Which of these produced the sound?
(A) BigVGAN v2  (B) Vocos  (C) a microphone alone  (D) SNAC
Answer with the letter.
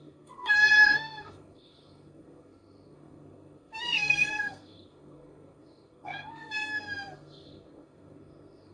D